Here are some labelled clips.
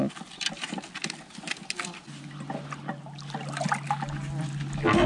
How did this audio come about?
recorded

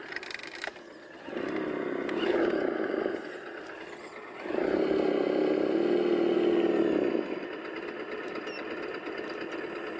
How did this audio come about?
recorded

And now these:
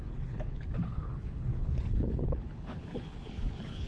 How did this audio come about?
remade